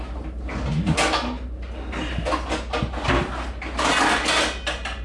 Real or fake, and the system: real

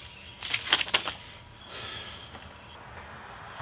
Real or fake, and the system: real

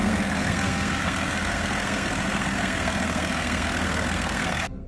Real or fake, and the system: fake, codec, SNAC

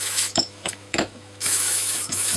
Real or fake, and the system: fake, autoencoder, DAC-VAE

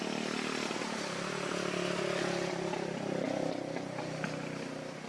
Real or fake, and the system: real